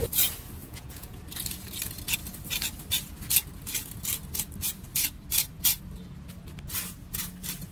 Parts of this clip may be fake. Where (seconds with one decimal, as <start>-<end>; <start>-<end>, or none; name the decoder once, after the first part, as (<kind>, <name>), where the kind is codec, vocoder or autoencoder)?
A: 0.6-1.2 (vocoder, Vocos)